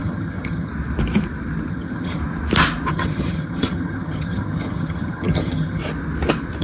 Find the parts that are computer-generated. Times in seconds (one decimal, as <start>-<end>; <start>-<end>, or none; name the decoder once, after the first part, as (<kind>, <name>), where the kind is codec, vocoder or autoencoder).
0.0-0.7 (vocoder, HiFi-GAN); 1.7-2.2; 2.9-5.8